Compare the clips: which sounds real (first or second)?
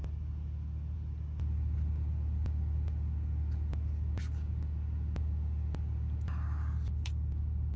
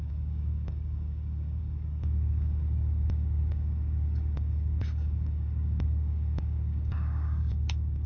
first